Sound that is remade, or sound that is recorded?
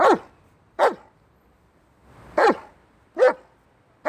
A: recorded